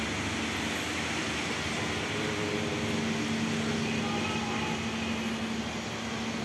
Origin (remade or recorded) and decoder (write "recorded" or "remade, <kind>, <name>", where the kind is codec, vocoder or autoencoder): recorded